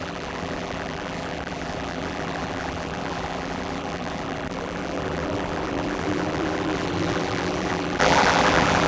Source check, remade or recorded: remade